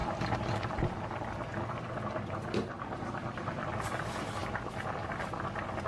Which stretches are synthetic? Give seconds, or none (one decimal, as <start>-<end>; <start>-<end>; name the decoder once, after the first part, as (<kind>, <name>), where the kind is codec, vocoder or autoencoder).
0.0-1.7 (vocoder, BigVGAN v2); 4.4-5.4